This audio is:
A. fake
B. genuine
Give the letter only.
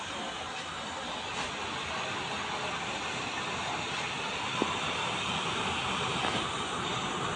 B